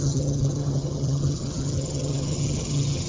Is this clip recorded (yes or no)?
no